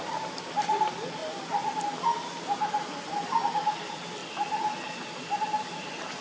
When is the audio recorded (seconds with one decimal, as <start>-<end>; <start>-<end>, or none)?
4.2-5.4